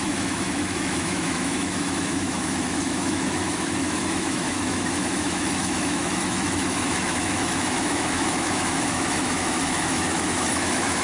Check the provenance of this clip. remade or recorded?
remade